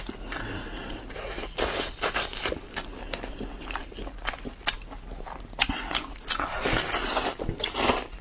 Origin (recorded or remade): recorded